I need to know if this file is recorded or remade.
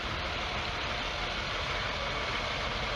recorded